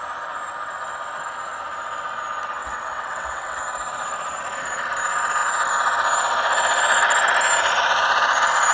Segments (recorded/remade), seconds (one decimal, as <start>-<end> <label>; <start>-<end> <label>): 0.0-2.6 recorded; 2.6-3.6 remade; 3.6-8.7 recorded